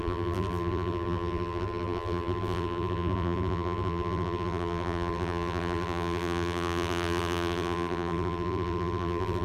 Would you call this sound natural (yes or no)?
no